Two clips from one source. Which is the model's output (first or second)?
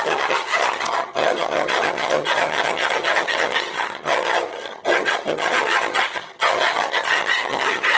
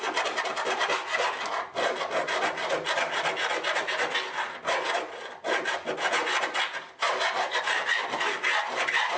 first